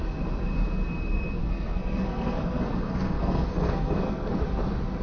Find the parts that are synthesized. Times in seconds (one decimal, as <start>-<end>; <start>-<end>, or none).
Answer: 1.4-4.4